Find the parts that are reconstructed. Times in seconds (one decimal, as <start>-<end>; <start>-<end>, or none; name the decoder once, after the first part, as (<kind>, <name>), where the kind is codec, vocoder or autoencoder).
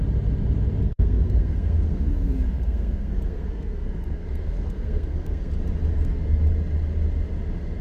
0.8-5.5 (codec, SNAC); 5.9-6.4